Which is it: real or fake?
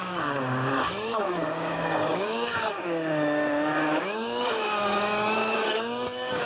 fake